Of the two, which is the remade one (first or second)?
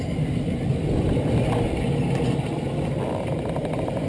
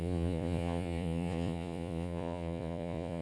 second